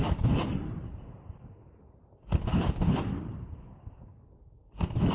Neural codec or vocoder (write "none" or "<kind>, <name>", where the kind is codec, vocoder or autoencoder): vocoder, BigVGAN v2